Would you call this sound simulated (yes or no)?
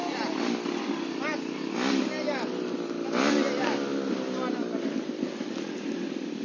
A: no